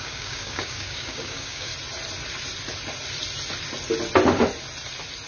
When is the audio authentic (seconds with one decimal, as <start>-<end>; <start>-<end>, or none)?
1.7-5.3